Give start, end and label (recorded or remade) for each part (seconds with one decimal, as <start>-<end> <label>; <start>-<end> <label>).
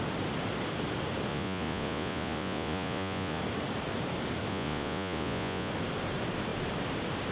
0.0-1.3 recorded; 1.3-3.4 remade; 3.4-4.5 recorded; 4.5-5.7 remade; 5.7-7.3 recorded